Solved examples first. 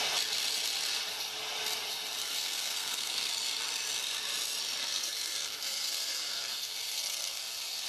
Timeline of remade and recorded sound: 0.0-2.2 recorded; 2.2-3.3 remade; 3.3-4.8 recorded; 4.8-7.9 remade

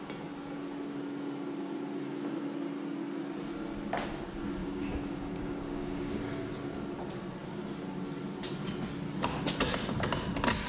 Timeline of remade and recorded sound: 0.0-4.6 recorded; 4.6-6.2 remade; 6.2-10.7 recorded

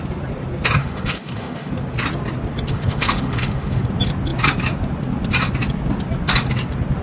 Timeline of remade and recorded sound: 0.0-0.8 recorded; 0.8-1.7 remade; 1.7-2.7 recorded; 2.7-3.8 remade; 3.8-7.0 recorded

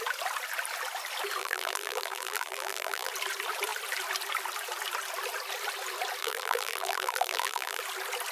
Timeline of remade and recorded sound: 0.0-1.4 recorded; 1.4-3.1 remade; 3.1-6.2 recorded; 6.2-7.8 remade; 7.8-8.3 recorded

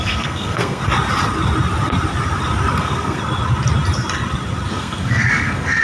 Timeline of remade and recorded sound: 0.0-0.8 remade; 0.8-2.8 recorded; 2.8-3.2 remade; 3.2-4.7 recorded; 4.7-5.8 remade

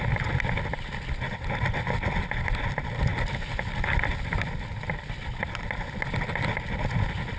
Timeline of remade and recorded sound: 0.0-7.4 recorded